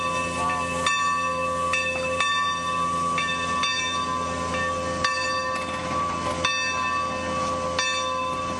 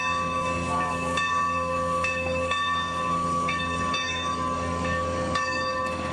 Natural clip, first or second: first